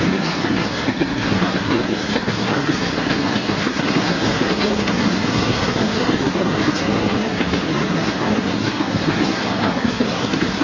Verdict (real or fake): fake